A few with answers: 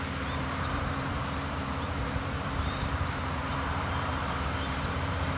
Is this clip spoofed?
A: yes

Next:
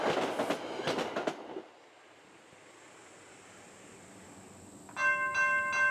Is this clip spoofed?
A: no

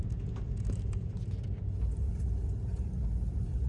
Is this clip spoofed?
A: no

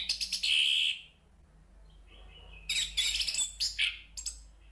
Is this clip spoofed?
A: no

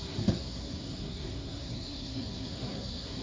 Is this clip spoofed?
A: yes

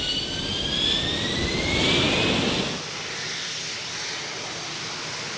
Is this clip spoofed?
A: no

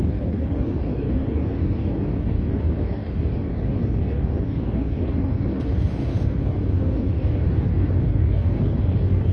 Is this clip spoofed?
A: yes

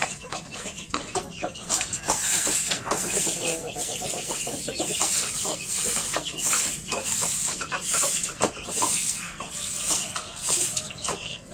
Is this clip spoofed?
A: yes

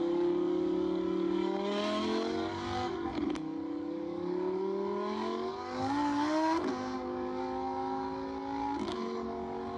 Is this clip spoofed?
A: yes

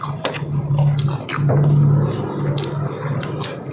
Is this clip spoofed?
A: no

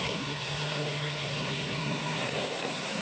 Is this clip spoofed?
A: yes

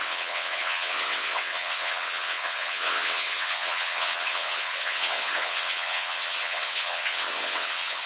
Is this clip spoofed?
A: yes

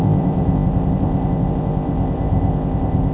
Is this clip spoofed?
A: yes